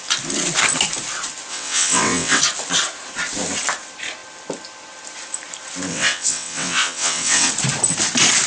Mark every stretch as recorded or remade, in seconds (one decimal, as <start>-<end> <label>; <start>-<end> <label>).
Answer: 0.0-1.5 recorded; 1.5-2.4 remade; 2.4-5.9 recorded; 5.9-7.5 remade; 7.5-8.5 recorded